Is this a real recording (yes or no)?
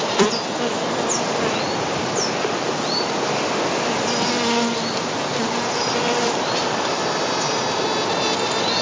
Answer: yes